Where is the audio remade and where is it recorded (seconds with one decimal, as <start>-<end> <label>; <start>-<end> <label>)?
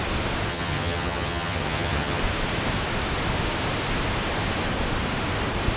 0.0-0.5 recorded; 0.5-2.2 remade; 2.2-5.8 recorded